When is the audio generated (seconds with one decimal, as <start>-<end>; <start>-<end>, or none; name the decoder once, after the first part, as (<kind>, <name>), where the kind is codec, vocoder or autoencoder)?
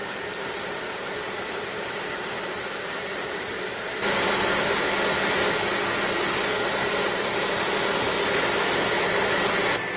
0.0-3.9 (vocoder, BigVGAN v2); 7.0-7.8